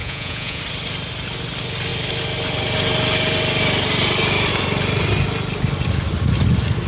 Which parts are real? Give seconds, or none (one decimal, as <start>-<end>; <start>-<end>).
0.6-6.9